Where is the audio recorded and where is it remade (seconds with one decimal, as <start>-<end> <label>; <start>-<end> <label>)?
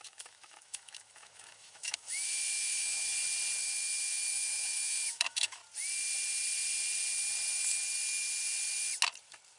0.0-3.1 remade; 3.1-3.6 recorded; 3.6-5.6 remade; 5.6-9.6 recorded